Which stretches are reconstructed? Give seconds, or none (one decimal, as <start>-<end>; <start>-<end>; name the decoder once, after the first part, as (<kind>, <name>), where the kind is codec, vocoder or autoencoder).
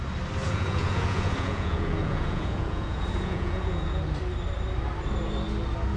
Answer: 0.4-4.0 (vocoder, Vocos)